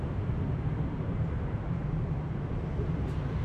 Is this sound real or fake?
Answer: fake